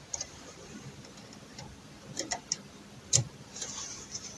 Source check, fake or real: fake